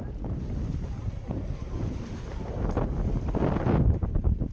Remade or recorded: recorded